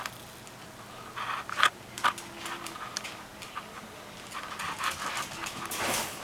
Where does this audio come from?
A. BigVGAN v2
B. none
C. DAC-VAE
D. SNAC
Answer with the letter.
B